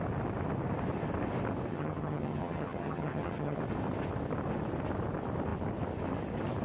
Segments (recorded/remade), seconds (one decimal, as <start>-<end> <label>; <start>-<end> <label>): 0.0-1.7 recorded; 1.7-3.6 remade; 3.6-6.6 recorded